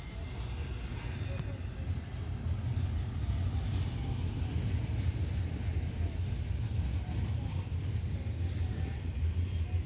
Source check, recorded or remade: recorded